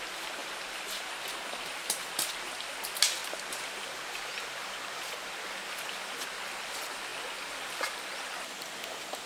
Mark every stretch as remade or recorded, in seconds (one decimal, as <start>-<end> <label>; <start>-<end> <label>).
0.0-0.4 recorded; 0.4-1.1 remade; 1.1-3.2 recorded; 3.2-5.3 remade; 5.3-9.3 recorded